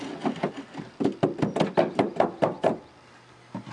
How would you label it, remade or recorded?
recorded